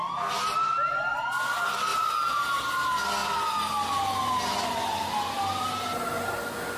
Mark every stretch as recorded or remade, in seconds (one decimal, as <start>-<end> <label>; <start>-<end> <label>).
0.0-6.8 recorded